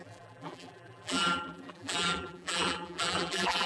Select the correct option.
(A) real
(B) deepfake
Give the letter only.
B